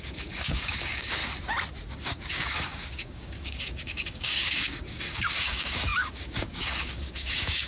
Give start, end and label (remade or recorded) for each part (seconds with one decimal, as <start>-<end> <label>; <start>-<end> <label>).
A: 0.0-1.2 remade; 1.2-1.9 recorded; 1.9-7.7 remade